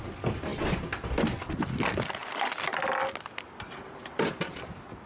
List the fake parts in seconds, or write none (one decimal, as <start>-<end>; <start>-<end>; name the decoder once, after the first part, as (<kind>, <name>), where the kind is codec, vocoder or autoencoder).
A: none